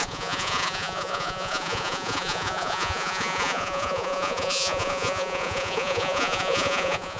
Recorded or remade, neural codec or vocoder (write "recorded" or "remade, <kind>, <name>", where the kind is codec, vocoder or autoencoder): remade, vocoder, Vocos